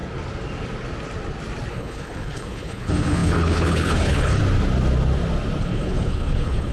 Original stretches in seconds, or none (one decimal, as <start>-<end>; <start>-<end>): 0.0-1.7; 4.4-5.6